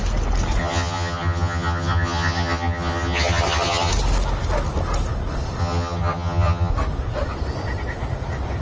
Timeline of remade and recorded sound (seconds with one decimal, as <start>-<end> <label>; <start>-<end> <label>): 0.0-0.6 recorded; 0.6-3.9 remade; 3.9-5.6 recorded; 5.6-6.7 remade; 6.7-8.6 recorded